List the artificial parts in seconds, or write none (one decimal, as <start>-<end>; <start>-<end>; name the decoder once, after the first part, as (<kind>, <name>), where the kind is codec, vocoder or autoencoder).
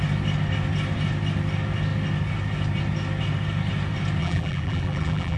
4.2-5.4 (vocoder, BigVGAN v2)